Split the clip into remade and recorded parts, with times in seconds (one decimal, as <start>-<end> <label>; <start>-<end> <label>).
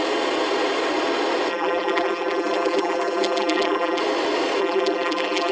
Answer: 0.0-1.5 recorded; 1.5-4.0 remade; 4.0-4.6 recorded; 4.6-5.5 remade